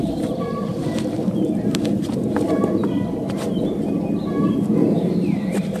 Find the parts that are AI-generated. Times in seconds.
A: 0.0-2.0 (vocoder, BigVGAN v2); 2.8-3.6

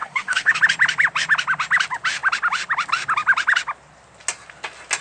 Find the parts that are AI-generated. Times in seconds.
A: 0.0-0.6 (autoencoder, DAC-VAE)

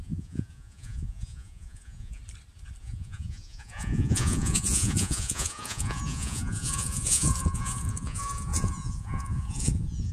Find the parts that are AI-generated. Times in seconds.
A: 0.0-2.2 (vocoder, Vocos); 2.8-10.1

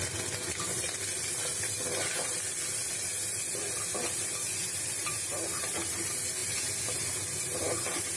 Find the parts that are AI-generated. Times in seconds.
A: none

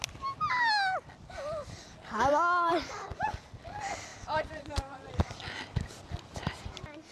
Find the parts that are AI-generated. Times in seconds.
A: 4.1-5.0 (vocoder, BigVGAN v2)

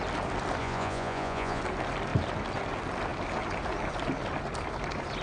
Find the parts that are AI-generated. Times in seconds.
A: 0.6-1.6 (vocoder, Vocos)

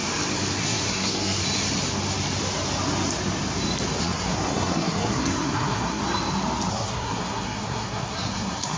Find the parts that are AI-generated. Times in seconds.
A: 0.6-1.4 (codec, SNAC); 4.0-6.0; 6.7-8.8

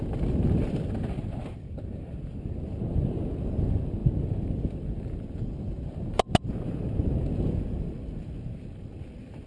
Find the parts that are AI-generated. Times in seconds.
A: none